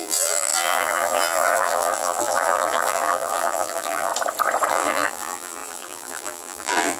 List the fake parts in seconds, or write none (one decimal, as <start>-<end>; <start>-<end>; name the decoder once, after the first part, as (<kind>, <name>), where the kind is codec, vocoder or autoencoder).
0.0-4.1 (vocoder, BigVGAN v2); 4.7-7.0